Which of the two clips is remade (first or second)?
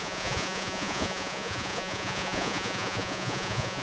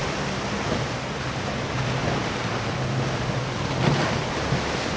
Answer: first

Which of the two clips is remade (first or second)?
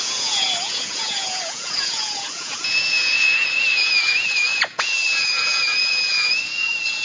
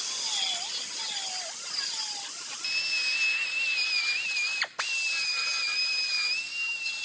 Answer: first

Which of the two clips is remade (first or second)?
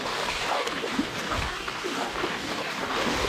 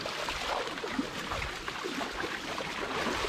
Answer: first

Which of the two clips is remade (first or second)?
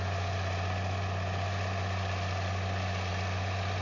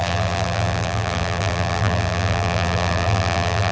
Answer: second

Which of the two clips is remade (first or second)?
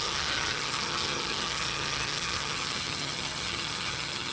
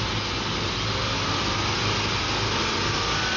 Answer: first